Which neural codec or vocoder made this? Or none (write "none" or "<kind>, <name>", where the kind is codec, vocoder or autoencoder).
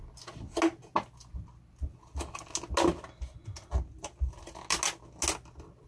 none